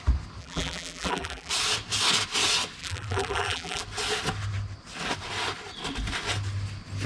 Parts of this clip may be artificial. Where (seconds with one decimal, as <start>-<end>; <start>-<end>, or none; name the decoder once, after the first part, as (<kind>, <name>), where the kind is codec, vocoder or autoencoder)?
0.4-1.5 (vocoder, BigVGAN v2); 2.8-3.8